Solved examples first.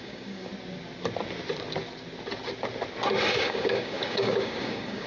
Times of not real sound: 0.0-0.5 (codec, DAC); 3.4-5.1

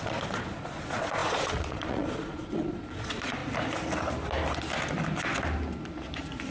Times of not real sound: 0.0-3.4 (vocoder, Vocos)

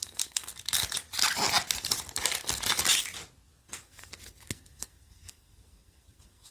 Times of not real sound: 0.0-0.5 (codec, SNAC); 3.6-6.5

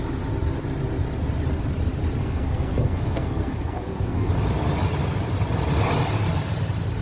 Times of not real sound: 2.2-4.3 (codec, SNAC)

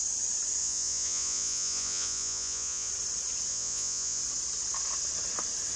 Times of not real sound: 0.6-2.9 (vocoder, Vocos); 3.5-4.2

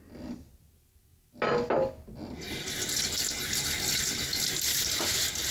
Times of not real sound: none

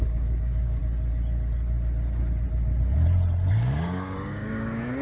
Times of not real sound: 0.0-0.8 (codec, DAC); 3.5-5.0